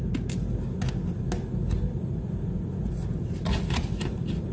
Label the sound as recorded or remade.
recorded